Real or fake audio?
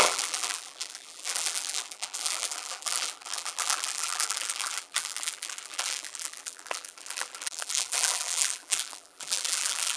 fake